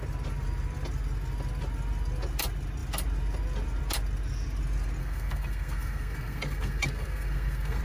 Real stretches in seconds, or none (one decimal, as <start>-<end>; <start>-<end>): 0.0-5.0